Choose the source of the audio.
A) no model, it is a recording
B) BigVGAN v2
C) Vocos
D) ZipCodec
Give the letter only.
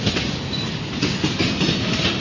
A